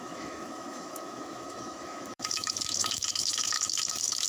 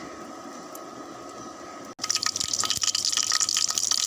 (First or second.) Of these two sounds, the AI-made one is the first